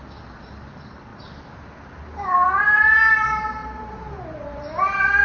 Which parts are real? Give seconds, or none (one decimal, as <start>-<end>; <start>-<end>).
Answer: 0.0-3.6; 4.7-5.2